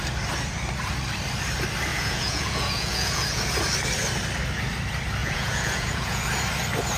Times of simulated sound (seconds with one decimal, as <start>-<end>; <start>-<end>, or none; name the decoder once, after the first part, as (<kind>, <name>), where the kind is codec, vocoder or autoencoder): 1.9-3.4 (vocoder, Vocos); 5.2-6.2